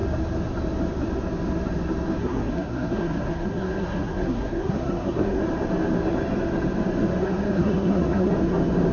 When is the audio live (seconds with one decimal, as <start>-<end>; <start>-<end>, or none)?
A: 0.0-2.2; 5.4-7.2; 8.3-8.9